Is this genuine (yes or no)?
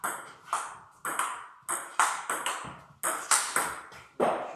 yes